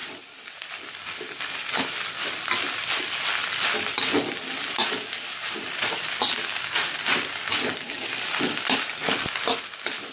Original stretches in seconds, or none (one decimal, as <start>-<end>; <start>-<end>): 1.2-10.1

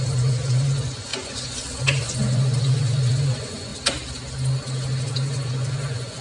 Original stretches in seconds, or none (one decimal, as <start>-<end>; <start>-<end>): 3.7-5.0